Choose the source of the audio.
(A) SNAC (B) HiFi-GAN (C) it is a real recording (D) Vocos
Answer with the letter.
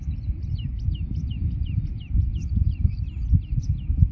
C